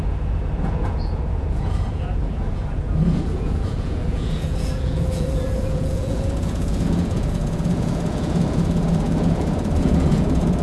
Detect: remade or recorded remade